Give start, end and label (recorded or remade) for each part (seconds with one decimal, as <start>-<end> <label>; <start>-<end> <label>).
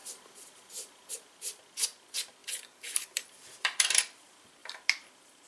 0.0-1.1 remade; 1.1-2.4 recorded; 2.4-4.0 remade; 4.0-5.5 recorded